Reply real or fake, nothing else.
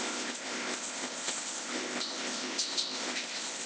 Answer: fake